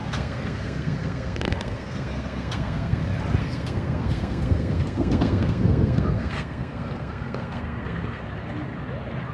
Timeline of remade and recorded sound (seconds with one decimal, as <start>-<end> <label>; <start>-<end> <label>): 0.0-3.0 remade; 3.0-3.4 recorded; 3.4-8.2 remade; 8.2-9.3 recorded